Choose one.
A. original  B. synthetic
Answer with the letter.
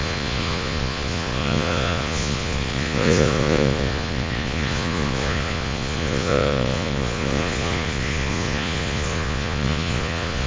B